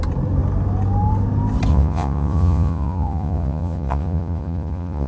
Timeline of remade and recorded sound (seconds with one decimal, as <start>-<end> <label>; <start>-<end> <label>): 0.0-1.7 recorded; 1.7-5.1 remade